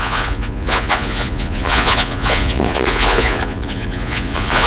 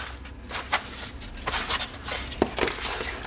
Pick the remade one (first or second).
first